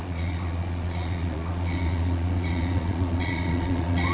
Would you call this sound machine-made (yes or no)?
yes